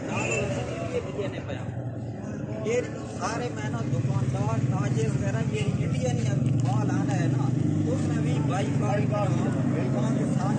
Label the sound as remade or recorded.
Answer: recorded